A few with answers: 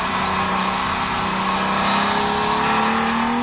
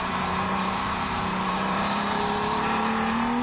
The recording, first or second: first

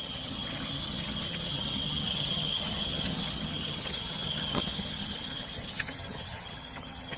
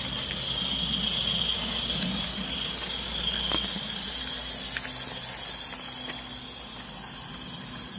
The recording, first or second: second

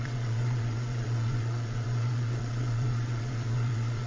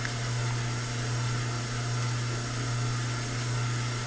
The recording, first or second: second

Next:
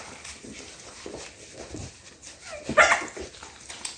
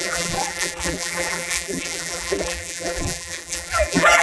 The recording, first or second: first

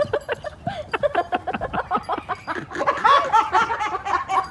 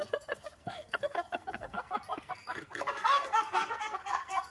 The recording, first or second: first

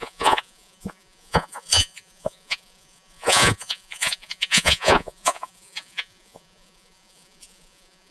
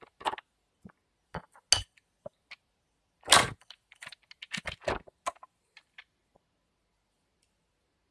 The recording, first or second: second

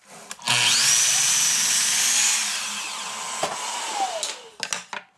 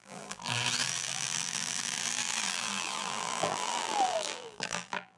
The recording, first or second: first